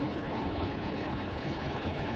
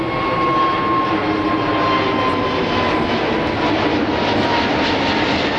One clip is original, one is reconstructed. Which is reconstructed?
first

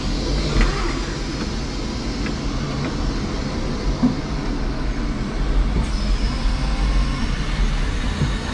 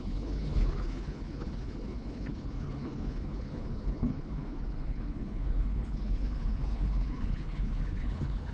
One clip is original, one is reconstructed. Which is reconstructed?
second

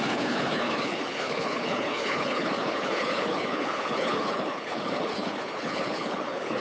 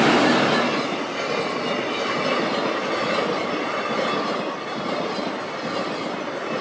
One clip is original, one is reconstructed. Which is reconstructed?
first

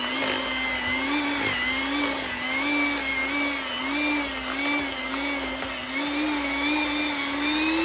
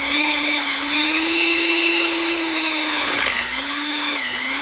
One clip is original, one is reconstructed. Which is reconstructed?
second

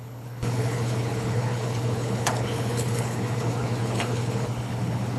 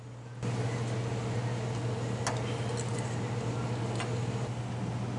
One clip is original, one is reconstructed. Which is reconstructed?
first